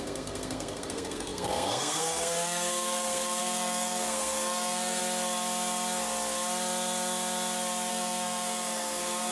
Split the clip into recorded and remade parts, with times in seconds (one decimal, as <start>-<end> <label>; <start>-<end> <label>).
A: 0.0-5.0 remade; 5.0-7.9 recorded; 7.9-9.3 remade

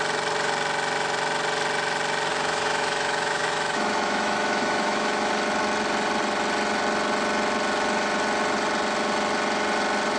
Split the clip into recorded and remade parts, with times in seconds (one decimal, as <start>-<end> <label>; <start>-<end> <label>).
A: 0.0-2.3 recorded; 2.3-5.3 remade; 5.3-10.2 recorded